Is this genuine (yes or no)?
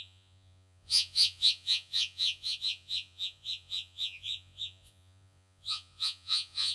no